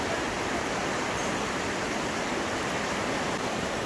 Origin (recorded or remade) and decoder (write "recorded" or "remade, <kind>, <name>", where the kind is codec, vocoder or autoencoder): recorded